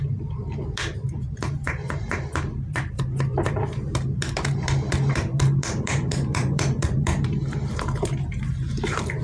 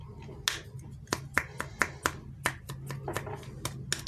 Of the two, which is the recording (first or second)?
second